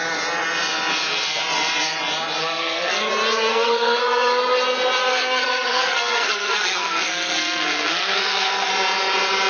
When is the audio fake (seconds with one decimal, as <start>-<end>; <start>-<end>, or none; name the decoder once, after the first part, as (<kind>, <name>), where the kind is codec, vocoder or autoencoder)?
2.4-3.1 (codec, SNAC); 3.5-4.4; 5.0-8.7